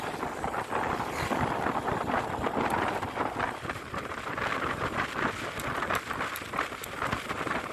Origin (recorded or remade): recorded